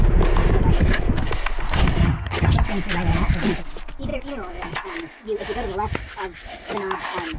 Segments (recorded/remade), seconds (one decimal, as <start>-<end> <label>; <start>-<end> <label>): 0.0-2.0 recorded; 2.0-2.6 remade; 2.6-7.4 recorded